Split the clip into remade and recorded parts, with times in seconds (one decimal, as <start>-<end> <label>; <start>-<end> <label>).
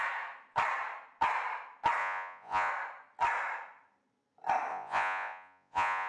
0.0-2.0 recorded; 2.0-2.7 remade; 2.7-4.7 recorded; 4.7-6.1 remade